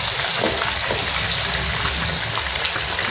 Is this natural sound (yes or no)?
yes